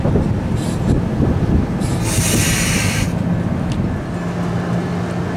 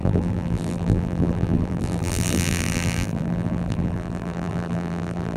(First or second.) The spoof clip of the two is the second